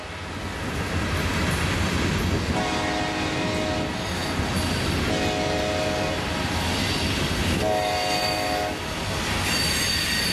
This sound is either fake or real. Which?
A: real